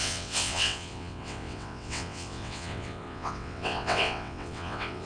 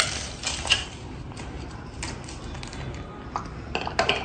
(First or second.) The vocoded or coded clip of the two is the first